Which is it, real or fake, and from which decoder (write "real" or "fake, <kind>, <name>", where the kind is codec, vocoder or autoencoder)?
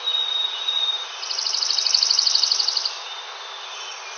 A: real